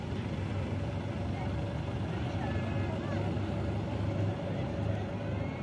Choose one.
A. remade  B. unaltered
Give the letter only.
B